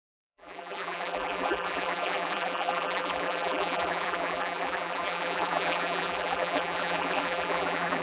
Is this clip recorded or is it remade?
remade